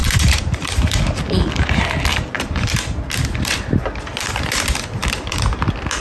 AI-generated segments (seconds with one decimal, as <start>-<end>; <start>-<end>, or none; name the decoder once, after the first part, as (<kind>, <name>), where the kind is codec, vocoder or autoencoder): 0.0-1.0 (vocoder, BigVGAN v2); 2.1-2.7; 5.0-5.5